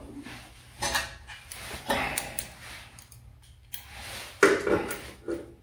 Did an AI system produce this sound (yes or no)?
no